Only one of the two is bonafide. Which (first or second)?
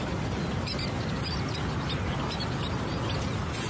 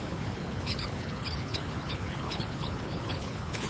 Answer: first